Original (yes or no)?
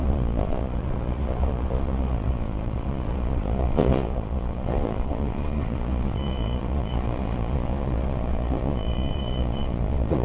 no